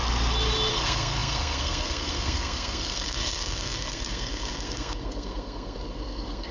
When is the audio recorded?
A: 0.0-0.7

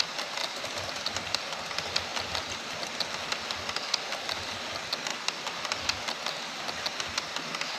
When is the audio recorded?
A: 0.0-7.8

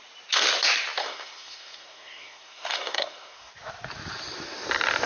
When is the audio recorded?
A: 0.0-1.0; 3.5-5.1

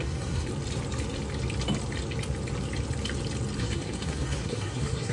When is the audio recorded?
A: 0.5-3.6

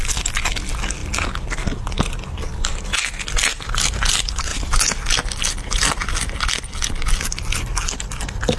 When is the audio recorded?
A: 0.0-8.6

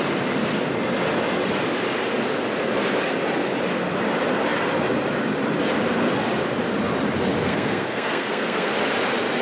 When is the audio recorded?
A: 0.0-7.4; 8.7-9.4

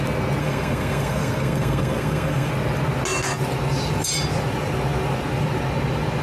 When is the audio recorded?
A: 0.0-0.4; 2.5-6.2

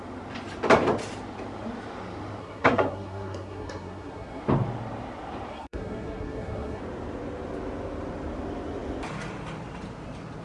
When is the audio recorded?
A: 0.0-2.4; 4.4-5.5; 6.8-10.4